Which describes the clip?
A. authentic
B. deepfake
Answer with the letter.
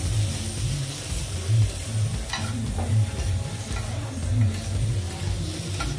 A